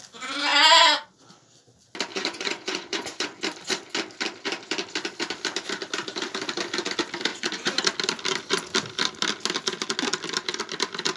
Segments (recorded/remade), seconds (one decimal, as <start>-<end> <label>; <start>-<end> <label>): 0.0-2.1 recorded; 2.1-3.4 remade; 3.4-7.3 recorded; 7.3-7.8 remade; 7.8-11.2 recorded